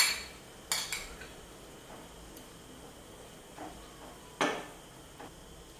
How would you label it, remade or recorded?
recorded